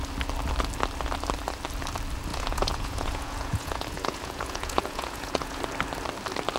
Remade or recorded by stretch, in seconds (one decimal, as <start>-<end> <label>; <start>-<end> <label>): 0.0-2.3 recorded; 2.3-5.6 remade; 5.6-6.6 recorded